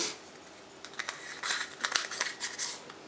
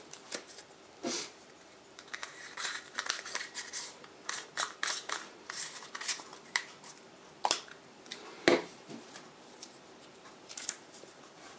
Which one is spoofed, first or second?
second